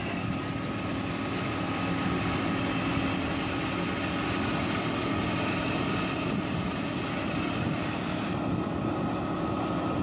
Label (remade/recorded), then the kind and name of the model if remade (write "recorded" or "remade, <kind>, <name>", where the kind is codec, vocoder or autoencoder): recorded